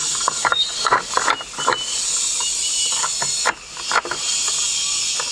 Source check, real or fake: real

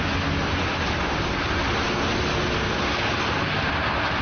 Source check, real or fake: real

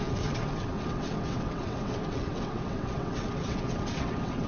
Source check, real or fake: fake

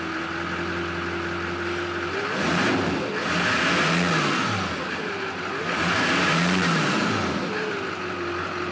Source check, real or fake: real